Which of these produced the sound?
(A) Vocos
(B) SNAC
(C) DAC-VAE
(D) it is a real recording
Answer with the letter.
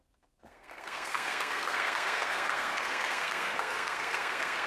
B